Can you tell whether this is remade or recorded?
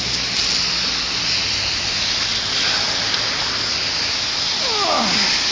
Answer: recorded